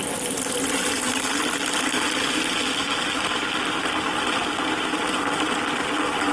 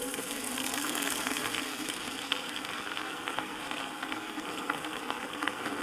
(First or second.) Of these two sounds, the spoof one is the second